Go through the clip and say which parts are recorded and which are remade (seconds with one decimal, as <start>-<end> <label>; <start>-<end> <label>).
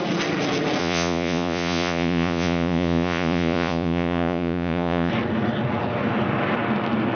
0.0-0.8 recorded; 0.8-5.1 remade; 5.1-7.1 recorded